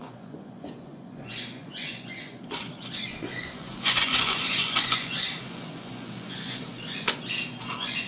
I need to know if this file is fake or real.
fake